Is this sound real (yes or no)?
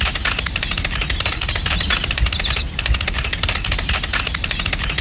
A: yes